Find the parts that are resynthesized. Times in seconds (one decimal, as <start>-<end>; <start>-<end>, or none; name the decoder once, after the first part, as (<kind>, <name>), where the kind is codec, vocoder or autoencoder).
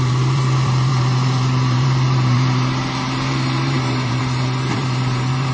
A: 0.0-5.5 (vocoder, BigVGAN v2)